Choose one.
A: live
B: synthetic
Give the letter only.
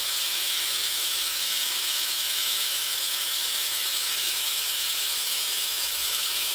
B